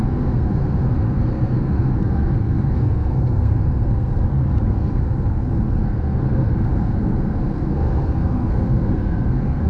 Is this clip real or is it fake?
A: fake